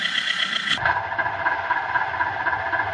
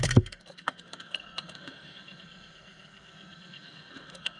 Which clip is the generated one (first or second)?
second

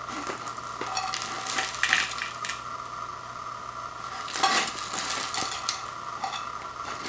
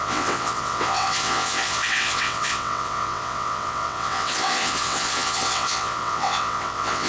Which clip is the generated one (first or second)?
second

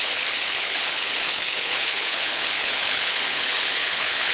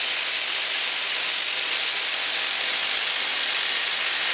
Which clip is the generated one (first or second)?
first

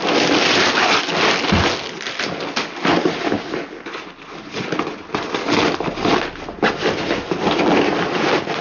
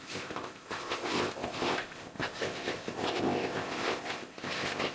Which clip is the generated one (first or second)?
second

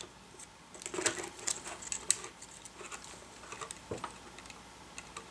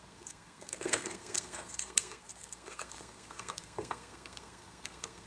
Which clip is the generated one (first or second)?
second